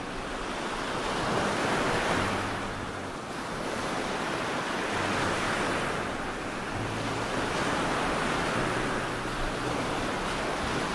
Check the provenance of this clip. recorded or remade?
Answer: remade